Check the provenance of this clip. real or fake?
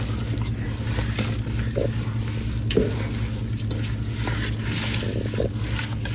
real